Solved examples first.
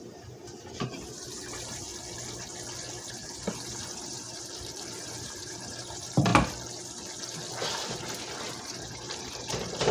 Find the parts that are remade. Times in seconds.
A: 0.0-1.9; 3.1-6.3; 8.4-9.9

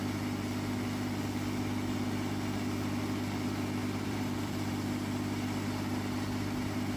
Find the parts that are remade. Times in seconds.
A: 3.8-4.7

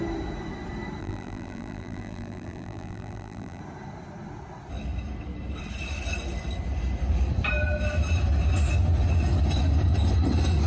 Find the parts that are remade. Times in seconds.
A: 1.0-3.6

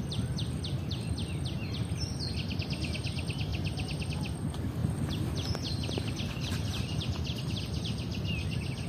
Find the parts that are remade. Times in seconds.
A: none

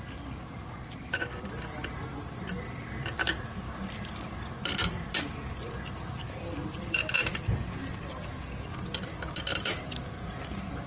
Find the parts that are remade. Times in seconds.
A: 0.0-7.3; 8.1-10.9

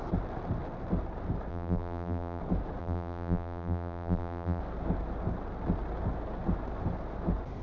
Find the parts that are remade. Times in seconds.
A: 1.5-2.4; 2.8-4.6

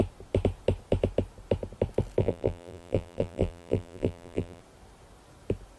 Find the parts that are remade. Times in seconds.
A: 2.2-4.6